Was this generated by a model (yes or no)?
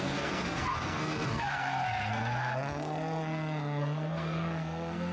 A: yes